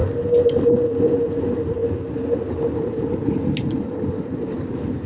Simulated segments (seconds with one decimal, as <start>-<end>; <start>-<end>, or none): none